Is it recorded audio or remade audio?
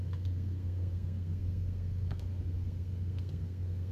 remade